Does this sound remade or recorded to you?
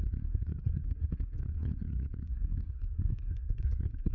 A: remade